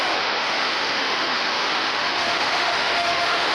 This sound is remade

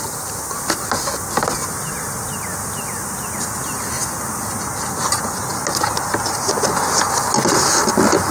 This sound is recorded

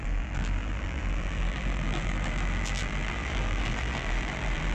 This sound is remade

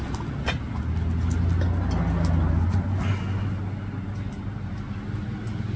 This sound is recorded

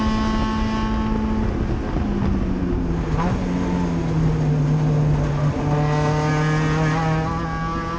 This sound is recorded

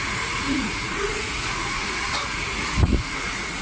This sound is remade